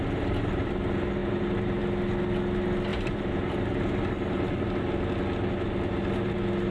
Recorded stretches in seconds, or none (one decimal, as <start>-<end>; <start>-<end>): 0.0-1.2; 1.8-2.9; 3.5-6.7

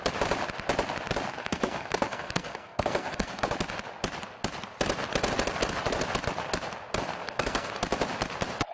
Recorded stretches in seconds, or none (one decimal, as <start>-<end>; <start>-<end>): 0.0-1.4; 3.5-7.2; 7.7-8.7

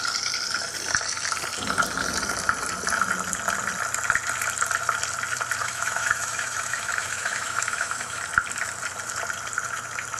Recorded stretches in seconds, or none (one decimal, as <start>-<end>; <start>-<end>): 0.0-5.6; 8.2-10.2

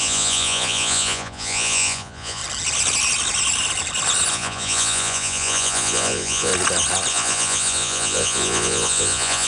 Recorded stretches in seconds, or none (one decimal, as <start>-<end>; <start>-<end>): 2.4-4.3; 6.5-7.1

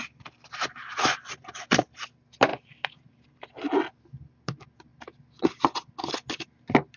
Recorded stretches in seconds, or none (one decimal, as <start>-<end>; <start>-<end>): 0.0-2.5; 3.8-7.0

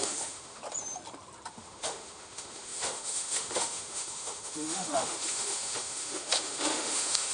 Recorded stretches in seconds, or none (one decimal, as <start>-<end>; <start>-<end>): 0.6-1.5

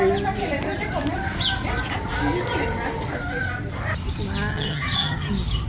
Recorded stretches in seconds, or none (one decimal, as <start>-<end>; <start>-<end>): 0.0-4.5; 5.3-5.7

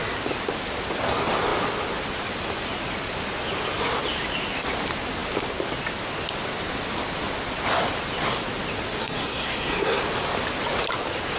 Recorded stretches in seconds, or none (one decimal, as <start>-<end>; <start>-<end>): 0.0-9.0; 10.0-11.4